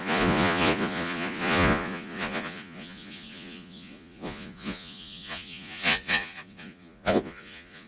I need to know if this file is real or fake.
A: fake